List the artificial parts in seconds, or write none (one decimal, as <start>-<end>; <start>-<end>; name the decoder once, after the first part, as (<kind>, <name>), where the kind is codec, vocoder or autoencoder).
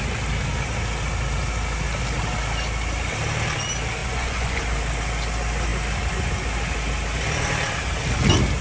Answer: 4.0-4.6 (vocoder, Vocos)